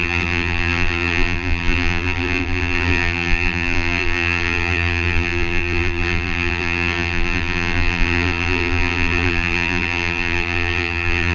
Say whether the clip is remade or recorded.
remade